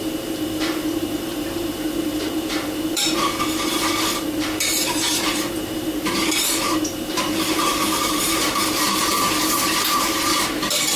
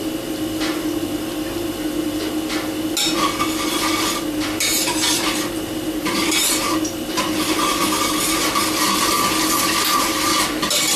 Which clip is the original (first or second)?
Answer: second